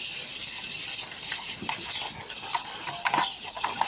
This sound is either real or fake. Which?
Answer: real